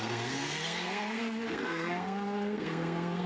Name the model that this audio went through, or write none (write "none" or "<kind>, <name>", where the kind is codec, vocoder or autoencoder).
codec, SNAC